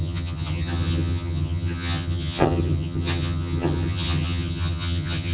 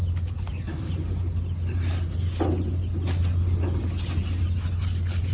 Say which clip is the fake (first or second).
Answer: first